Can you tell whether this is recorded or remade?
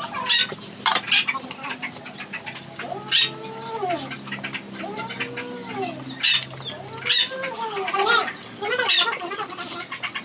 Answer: recorded